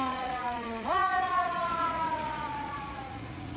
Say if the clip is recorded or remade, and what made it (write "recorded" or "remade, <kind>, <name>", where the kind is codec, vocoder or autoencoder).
remade, vocoder, Vocos